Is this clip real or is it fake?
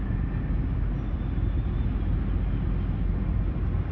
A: real